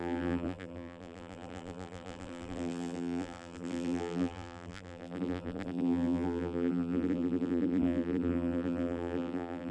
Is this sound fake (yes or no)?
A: yes